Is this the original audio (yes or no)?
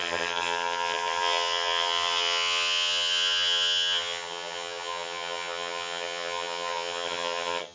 no